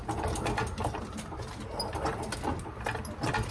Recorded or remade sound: recorded